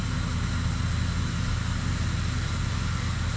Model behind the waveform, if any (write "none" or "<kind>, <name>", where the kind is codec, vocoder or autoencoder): none